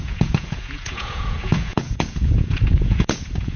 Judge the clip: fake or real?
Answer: fake